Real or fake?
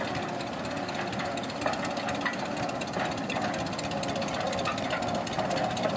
real